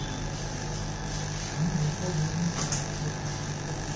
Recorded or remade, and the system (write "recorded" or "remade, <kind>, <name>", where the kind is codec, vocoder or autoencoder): recorded